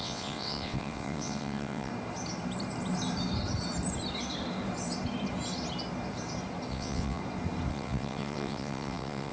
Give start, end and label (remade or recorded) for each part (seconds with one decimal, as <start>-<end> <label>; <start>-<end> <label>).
0.0-1.9 remade; 1.9-6.7 recorded; 6.7-7.2 remade; 7.2-7.7 recorded; 7.7-9.3 remade